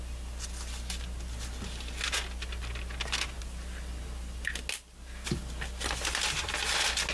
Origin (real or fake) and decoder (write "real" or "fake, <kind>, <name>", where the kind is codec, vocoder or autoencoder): real